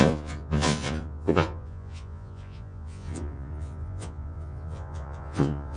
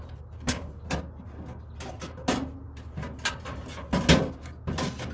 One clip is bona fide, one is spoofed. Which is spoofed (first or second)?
first